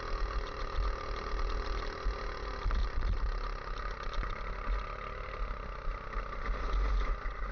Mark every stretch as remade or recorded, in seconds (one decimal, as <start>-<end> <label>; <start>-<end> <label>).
0.0-2.8 recorded; 2.8-3.6 remade; 3.6-7.5 recorded